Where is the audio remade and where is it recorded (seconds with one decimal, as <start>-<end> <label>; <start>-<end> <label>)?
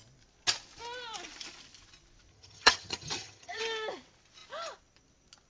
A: 0.0-2.3 recorded; 2.3-3.6 remade; 3.6-5.5 recorded